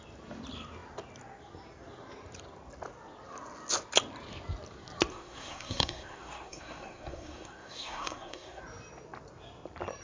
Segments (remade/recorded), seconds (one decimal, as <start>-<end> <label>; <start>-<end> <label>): 0.0-5.1 recorded; 5.1-8.6 remade; 8.6-10.0 recorded